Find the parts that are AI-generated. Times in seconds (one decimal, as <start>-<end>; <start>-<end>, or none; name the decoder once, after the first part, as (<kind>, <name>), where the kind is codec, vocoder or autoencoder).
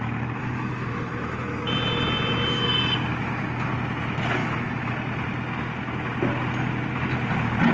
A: 0.4-1.6 (autoencoder, DAC-VAE); 3.1-3.7; 4.4-4.9